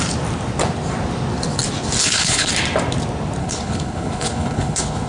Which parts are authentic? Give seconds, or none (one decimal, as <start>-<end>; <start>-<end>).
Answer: 0.0-2.0; 2.5-3.4